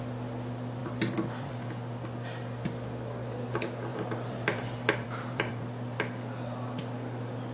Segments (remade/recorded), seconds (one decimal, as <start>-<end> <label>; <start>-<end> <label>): 0.0-0.8 recorded; 0.8-1.5 remade; 1.5-3.9 recorded; 3.9-5.6 remade; 5.6-7.5 recorded